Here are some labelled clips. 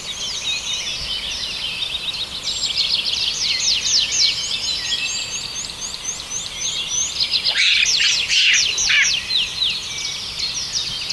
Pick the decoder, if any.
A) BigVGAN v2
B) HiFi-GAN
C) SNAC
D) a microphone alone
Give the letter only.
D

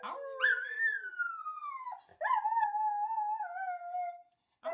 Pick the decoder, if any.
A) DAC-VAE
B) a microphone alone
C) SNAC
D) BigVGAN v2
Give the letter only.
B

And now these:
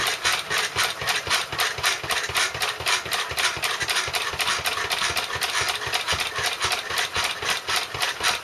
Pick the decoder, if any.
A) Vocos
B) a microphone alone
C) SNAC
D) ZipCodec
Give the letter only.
B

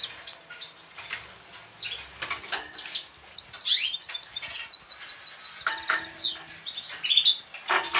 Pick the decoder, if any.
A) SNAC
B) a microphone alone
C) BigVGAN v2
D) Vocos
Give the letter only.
B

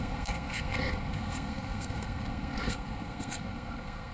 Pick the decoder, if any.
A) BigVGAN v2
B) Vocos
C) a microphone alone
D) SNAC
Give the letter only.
D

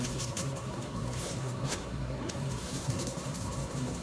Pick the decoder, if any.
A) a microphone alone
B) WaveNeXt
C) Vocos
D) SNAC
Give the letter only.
D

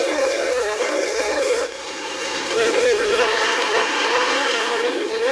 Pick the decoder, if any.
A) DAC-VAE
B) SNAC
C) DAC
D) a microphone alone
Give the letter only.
B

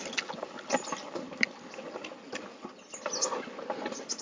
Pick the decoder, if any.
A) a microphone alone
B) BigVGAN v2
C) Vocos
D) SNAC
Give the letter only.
A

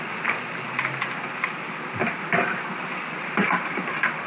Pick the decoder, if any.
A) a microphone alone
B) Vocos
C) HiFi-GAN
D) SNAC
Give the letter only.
A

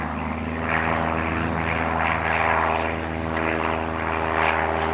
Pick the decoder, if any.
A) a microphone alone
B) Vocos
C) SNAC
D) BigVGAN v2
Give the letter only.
A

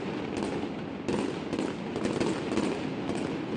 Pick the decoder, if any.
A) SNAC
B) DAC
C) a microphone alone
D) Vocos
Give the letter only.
C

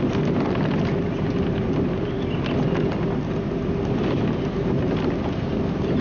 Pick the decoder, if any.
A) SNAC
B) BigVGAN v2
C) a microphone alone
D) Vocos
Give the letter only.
C